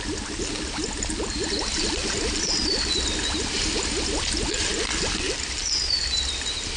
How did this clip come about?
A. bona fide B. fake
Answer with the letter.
A